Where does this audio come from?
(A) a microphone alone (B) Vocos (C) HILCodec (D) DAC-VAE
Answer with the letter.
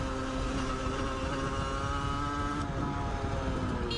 A